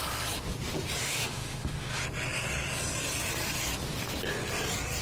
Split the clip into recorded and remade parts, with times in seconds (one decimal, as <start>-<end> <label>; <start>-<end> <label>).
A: 0.0-1.0 recorded; 1.0-2.0 remade; 2.0-5.0 recorded